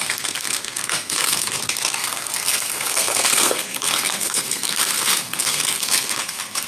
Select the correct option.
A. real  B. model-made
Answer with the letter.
B